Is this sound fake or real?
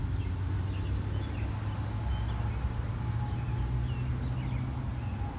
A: real